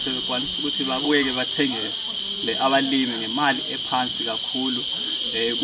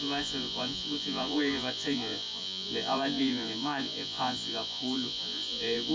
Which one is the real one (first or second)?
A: first